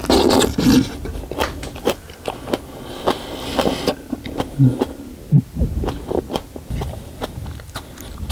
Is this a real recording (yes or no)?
yes